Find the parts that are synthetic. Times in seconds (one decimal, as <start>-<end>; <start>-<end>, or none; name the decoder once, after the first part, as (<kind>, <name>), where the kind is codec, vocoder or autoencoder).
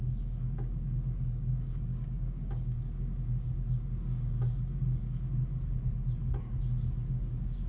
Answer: 0.0-5.3 (codec, DAC); 7.1-7.7